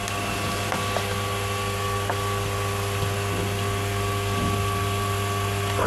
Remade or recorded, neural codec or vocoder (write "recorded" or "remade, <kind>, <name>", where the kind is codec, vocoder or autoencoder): recorded